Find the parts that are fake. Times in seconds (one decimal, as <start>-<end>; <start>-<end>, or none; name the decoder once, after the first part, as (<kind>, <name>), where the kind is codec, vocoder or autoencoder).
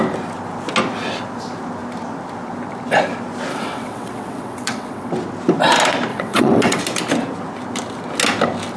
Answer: 3.5-5.1 (vocoder, WaveNeXt); 6.1-6.8